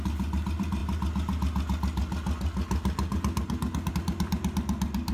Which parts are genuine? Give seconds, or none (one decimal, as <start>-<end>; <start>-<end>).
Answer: 0.0-5.1

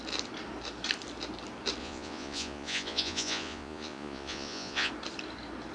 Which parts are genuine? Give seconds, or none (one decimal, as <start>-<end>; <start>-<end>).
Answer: 0.0-1.8; 4.9-5.7

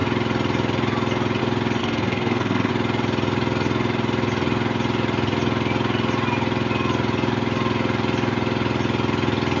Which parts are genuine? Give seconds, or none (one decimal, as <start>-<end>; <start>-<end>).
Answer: 0.0-1.8; 2.7-9.6

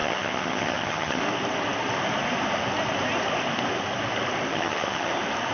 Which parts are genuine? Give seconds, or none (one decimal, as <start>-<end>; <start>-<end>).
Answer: 1.2-4.5; 5.1-5.5